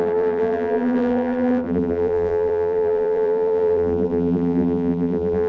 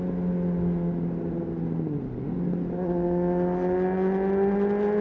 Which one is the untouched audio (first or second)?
second